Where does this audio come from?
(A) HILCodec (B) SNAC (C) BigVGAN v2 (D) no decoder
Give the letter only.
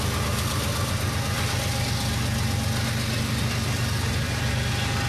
D